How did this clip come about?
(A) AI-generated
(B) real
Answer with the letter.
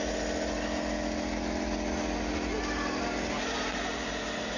B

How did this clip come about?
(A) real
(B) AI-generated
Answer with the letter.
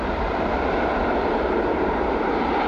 B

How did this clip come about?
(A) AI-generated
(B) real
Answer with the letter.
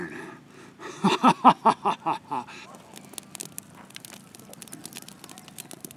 B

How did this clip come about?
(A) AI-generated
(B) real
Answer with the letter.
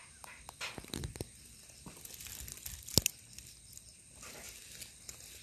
B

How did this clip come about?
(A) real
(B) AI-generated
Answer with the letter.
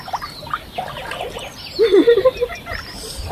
A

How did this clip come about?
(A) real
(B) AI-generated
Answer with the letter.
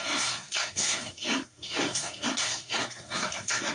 B